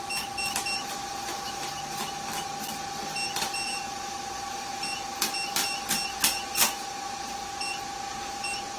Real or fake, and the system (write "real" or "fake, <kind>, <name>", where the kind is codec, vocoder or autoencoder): real